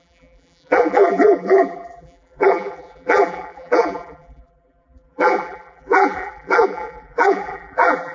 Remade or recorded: remade